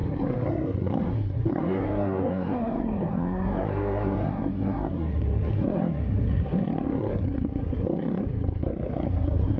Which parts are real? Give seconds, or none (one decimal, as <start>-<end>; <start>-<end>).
none